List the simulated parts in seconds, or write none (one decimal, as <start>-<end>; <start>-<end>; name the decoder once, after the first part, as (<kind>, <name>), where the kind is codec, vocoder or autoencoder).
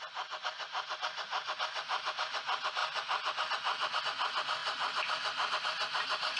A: 4.6-5.5 (vocoder, BigVGAN v2)